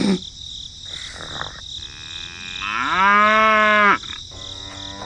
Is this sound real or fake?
real